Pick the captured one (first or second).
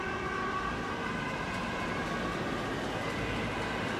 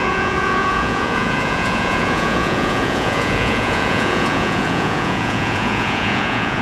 first